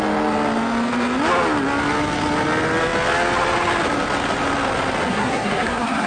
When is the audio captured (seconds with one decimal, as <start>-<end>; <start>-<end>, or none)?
0.0-5.1